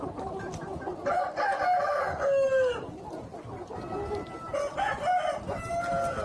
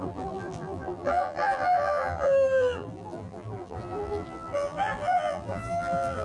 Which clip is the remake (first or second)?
second